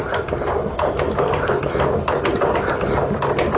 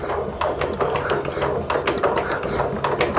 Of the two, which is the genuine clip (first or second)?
second